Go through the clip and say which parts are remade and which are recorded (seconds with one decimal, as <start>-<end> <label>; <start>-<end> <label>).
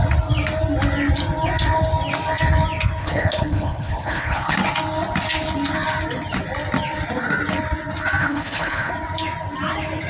0.0-3.0 recorded; 3.0-4.5 remade; 4.5-8.2 recorded; 8.2-8.9 remade; 8.9-10.1 recorded